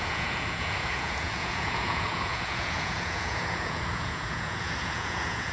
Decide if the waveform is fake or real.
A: fake